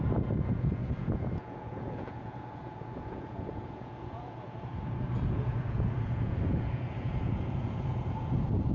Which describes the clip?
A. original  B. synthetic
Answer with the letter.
B